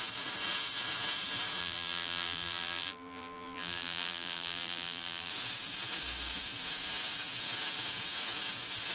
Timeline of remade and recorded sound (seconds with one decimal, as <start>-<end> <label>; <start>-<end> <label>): 0.0-1.6 recorded; 1.6-5.3 remade; 5.3-8.9 recorded